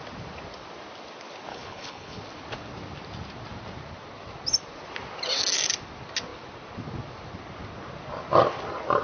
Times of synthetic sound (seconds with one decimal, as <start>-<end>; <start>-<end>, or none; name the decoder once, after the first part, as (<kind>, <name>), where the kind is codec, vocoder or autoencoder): 1.5-2.2 (codec, HILCodec)